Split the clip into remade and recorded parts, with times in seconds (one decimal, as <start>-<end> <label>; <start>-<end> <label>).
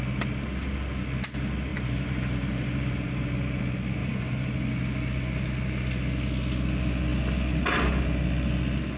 0.0-1.7 recorded; 1.7-3.6 remade; 3.6-4.0 recorded; 4.0-4.5 remade; 4.5-9.0 recorded